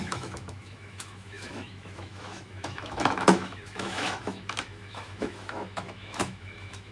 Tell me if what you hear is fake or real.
fake